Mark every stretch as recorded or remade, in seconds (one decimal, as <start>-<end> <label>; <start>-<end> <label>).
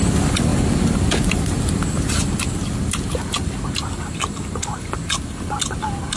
0.0-6.2 recorded